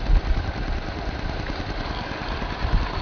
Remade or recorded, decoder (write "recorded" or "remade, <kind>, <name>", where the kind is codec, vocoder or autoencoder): recorded